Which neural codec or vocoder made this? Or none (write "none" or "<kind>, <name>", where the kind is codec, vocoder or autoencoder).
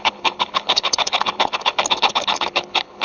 codec, HILCodec